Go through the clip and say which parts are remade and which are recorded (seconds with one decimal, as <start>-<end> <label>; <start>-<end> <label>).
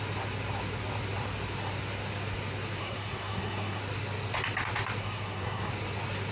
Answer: 0.0-2.8 recorded; 2.8-3.8 remade; 3.8-5.0 recorded; 5.0-5.7 remade; 5.7-6.3 recorded